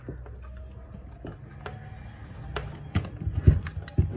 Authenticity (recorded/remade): recorded